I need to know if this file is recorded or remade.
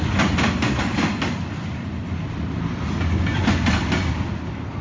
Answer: recorded